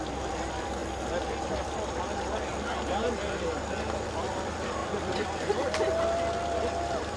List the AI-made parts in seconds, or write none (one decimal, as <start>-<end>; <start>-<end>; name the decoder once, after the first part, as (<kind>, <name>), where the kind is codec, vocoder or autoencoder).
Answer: 0.0-0.8 (vocoder, BigVGAN v2); 1.4-4.8; 6.8-7.2